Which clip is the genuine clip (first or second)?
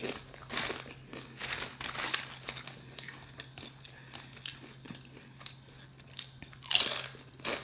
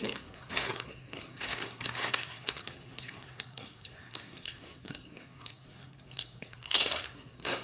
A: first